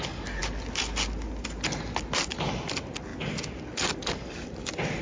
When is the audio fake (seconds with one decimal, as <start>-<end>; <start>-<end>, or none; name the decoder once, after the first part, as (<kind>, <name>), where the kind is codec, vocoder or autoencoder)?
none